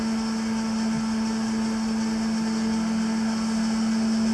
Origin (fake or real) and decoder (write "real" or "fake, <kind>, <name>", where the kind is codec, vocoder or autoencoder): real